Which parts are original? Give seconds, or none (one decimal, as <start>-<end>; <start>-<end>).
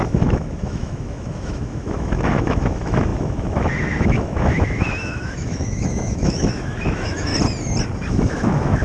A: 7.3-8.1